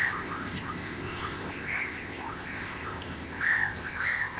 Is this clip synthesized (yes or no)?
yes